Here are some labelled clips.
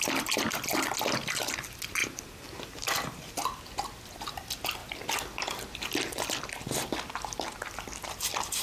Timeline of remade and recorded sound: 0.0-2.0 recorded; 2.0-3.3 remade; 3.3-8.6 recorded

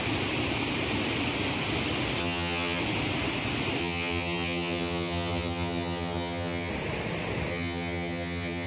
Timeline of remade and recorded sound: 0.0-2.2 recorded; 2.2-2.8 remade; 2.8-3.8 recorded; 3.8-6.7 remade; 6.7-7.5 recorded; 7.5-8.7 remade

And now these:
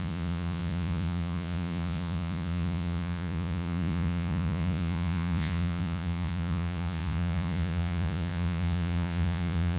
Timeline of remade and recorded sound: 0.0-9.8 remade

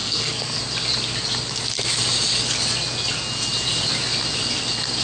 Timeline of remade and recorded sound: 0.0-0.6 remade; 0.6-5.0 recorded

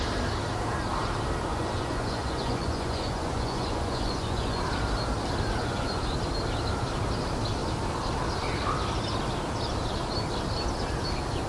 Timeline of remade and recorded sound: 0.0-1.5 recorded; 1.5-4.6 remade; 4.6-5.6 recorded; 5.6-6.2 remade; 6.2-11.5 recorded

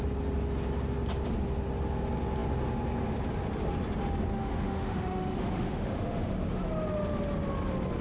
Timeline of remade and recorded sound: 0.0-4.3 recorded; 4.3-6.6 remade; 6.6-8.0 recorded

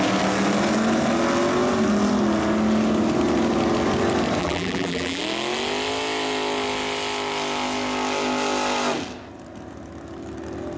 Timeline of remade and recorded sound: 0.0-4.4 recorded; 4.4-5.2 remade; 5.2-10.8 recorded

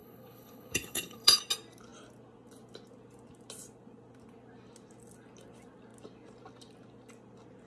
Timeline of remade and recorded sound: 0.0-1.4 remade; 1.4-7.7 recorded